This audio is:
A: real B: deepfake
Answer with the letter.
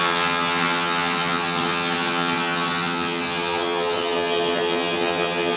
B